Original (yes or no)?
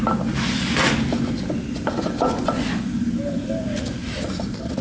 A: yes